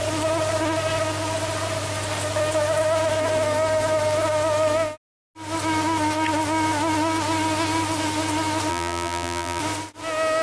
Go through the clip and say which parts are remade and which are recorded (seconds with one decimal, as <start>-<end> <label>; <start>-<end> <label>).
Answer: 0.0-8.7 recorded; 8.7-9.6 remade; 9.6-10.4 recorded